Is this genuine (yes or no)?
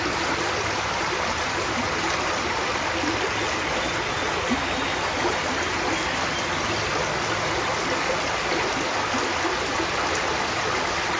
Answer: yes